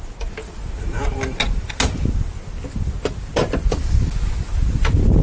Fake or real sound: real